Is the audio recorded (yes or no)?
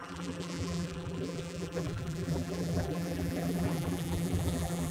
no